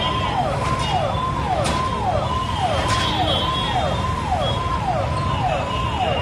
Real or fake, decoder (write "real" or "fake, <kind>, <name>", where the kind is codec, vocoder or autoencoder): real